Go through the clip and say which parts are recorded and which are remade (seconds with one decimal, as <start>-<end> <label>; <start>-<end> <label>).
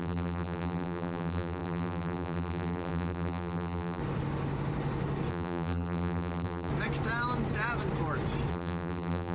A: 0.0-4.0 remade; 4.0-5.3 recorded; 5.3-6.7 remade; 6.7-8.5 recorded; 8.5-9.3 remade